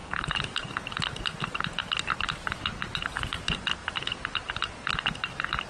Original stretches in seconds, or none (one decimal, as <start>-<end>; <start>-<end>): 0.0-3.8; 4.5-5.7